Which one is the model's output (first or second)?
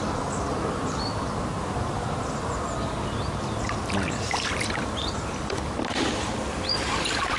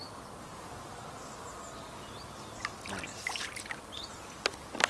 first